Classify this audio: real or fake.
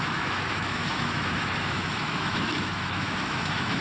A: fake